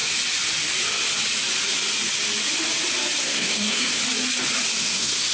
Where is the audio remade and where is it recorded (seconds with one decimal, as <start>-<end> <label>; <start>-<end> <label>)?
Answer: 0.0-3.2 recorded; 3.2-4.0 remade; 4.0-4.8 recorded; 4.8-5.3 remade